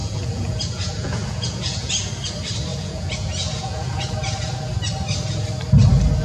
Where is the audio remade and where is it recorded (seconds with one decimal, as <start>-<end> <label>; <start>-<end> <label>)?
0.0-1.9 remade; 1.9-2.7 recorded; 2.7-4.1 remade; 4.1-6.2 recorded